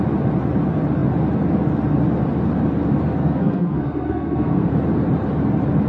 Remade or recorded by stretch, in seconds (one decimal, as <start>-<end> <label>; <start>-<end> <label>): 0.0-3.2 recorded; 3.2-4.7 remade; 4.7-5.9 recorded